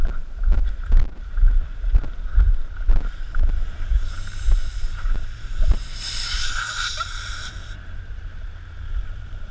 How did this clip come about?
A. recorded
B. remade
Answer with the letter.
B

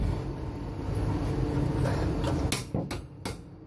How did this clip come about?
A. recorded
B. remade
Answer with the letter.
A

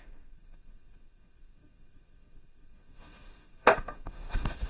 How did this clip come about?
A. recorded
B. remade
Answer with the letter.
B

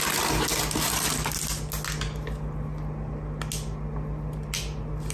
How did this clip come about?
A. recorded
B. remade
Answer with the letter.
A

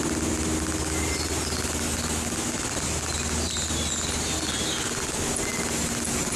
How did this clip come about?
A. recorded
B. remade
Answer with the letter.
A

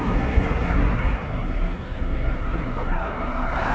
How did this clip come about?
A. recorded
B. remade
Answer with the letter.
B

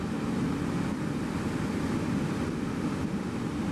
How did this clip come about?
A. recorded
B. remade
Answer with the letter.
A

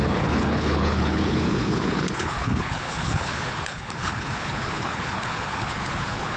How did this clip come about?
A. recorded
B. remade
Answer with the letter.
B